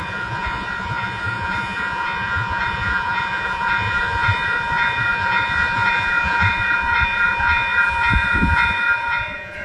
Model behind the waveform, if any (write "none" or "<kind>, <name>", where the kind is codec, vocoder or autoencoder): vocoder, Vocos